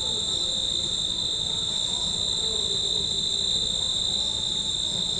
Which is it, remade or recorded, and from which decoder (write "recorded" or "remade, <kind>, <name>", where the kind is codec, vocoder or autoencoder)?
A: recorded